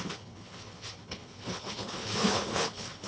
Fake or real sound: fake